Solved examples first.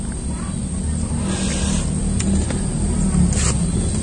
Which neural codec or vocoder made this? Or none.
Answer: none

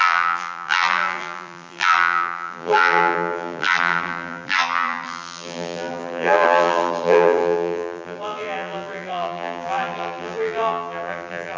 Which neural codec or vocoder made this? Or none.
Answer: vocoder, BigVGAN v2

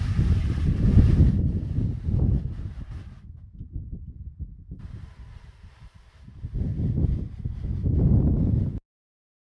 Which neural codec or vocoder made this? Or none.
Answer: none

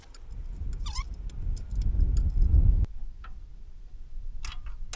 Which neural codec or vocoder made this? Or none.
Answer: none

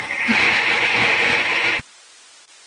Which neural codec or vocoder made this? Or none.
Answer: vocoder, Vocos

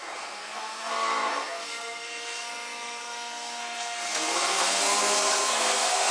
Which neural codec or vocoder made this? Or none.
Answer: codec, SNAC